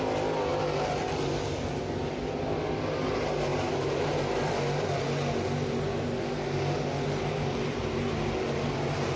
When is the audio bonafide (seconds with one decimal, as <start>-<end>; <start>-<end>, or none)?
0.0-9.2